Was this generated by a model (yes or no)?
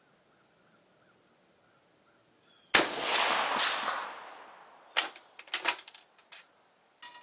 no